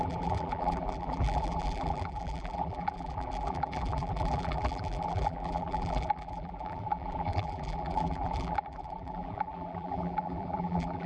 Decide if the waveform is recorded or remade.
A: remade